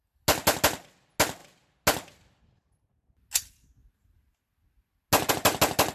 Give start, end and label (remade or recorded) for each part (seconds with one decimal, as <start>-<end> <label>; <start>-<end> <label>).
0.0-5.9 recorded